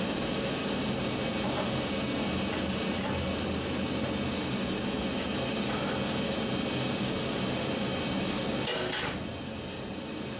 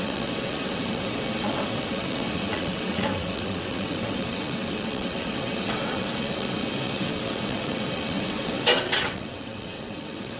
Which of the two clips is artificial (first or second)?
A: second